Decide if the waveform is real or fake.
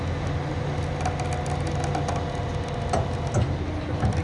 real